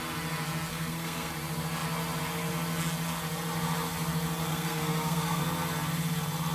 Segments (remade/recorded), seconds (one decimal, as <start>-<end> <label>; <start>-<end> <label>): 0.0-0.7 recorded; 0.7-1.3 remade; 1.3-4.5 recorded; 4.5-5.4 remade; 5.4-6.5 recorded